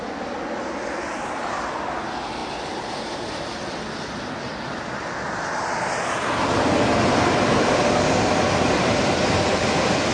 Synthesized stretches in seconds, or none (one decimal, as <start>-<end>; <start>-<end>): none